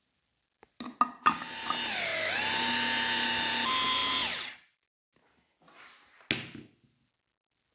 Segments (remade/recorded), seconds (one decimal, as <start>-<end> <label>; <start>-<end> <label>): 0.0-7.7 recorded